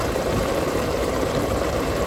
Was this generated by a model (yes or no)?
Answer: yes